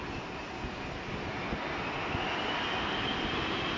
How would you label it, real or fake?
real